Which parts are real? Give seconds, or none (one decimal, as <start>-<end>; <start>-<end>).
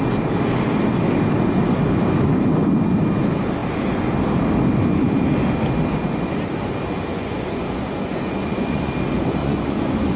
0.0-7.1; 8.9-9.4